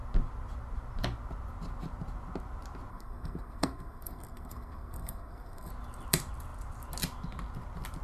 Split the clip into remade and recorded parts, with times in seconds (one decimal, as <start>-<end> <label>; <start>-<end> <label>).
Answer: 0.0-2.9 recorded; 2.9-5.7 remade; 5.7-8.0 recorded